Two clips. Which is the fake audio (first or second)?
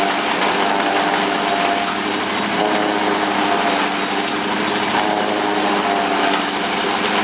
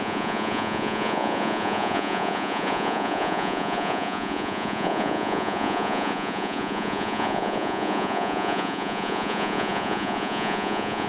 second